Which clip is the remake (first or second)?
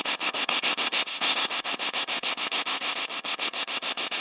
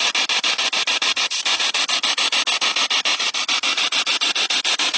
first